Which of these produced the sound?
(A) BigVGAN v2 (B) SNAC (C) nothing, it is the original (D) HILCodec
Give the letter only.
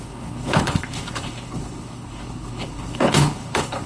D